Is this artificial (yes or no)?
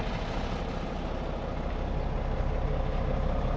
no